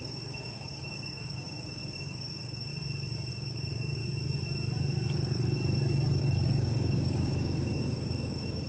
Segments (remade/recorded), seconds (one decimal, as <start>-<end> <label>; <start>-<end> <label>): 0.0-2.7 remade; 2.7-3.3 recorded; 3.3-4.0 remade; 4.0-5.1 recorded; 5.1-5.6 remade; 5.6-6.2 recorded; 6.2-8.7 remade